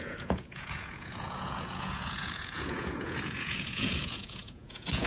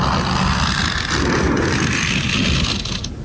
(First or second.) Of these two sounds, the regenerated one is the first